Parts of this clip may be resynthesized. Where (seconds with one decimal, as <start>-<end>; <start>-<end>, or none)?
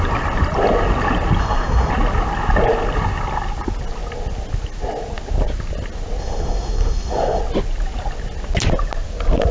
1.4-1.9; 6.2-7.4